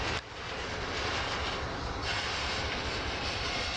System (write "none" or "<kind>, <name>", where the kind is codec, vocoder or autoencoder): none